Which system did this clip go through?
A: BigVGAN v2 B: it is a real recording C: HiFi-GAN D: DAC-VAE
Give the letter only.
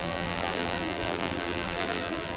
A